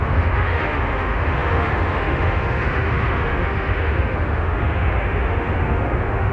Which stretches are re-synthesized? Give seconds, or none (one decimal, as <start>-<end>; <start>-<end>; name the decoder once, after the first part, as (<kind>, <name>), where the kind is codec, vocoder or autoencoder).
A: 0.0-6.3 (autoencoder, DAC-VAE)